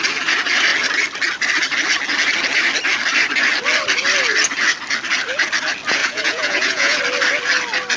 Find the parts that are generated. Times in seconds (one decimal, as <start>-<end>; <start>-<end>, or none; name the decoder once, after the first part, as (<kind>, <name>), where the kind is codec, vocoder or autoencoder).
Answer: 6.0-7.0 (vocoder, Vocos)